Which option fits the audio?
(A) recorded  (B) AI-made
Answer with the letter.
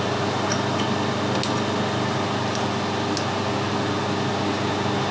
A